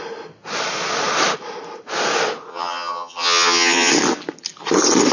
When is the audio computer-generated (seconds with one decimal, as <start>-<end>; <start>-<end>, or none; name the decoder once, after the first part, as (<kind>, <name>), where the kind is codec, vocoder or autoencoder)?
2.5-3.9 (vocoder, HiFi-GAN)